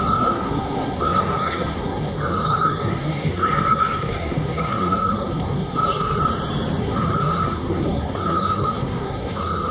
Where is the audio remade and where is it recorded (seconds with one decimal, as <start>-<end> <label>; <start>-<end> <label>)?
0.0-6.2 remade; 6.2-6.8 recorded; 6.8-9.7 remade